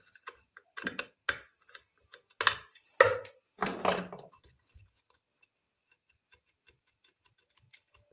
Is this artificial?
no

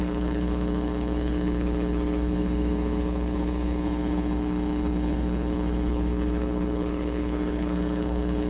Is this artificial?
yes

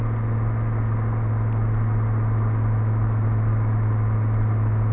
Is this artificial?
no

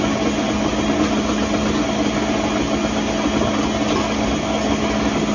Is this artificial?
no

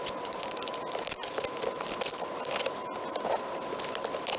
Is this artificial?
no